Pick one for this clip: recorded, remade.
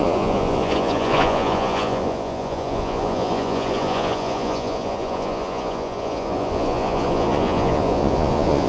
remade